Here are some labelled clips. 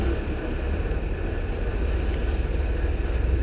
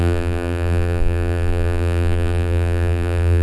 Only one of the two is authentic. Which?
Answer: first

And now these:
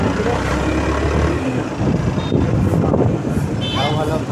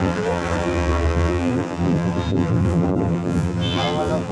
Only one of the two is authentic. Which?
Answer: first